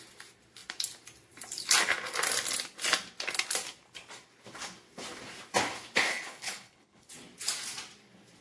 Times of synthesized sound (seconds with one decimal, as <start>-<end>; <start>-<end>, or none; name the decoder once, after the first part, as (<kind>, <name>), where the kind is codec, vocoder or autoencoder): 6.1-7.1 (codec, HILCodec)